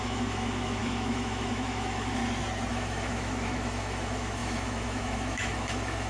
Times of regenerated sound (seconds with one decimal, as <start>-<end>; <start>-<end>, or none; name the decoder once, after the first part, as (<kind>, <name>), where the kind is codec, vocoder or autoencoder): 0.0-2.2 (autoencoder, DAC-VAE); 2.7-6.1